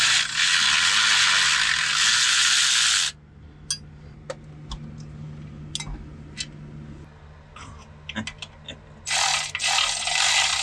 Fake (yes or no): no